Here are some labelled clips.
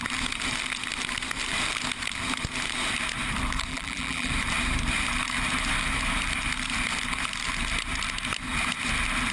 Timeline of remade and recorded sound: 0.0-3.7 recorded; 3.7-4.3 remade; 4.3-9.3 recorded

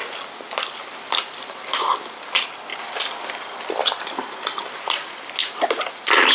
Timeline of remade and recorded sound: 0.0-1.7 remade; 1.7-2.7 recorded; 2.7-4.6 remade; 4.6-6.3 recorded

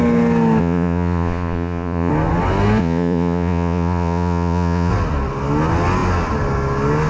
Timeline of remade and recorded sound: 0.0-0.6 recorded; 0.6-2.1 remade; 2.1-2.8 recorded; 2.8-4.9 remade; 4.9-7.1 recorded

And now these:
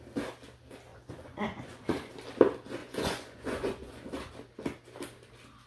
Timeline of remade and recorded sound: 0.0-0.9 recorded; 0.9-2.1 remade; 2.1-2.8 recorded; 2.8-4.3 remade; 4.3-5.7 recorded